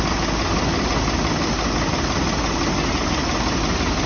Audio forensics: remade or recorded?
recorded